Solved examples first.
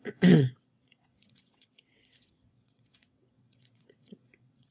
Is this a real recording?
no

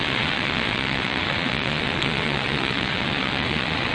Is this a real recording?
no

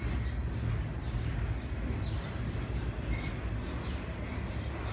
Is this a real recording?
yes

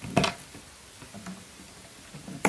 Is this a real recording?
yes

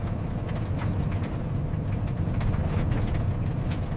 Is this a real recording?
yes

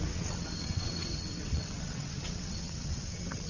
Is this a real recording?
no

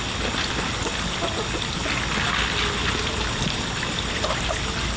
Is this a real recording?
yes